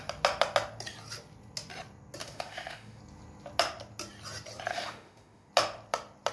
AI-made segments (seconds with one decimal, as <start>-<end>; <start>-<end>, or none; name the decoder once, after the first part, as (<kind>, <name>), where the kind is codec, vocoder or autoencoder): 2.2-3.0 (autoencoder, DAC-VAE); 4.7-5.5